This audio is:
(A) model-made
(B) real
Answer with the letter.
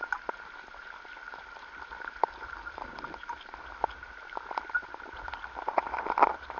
A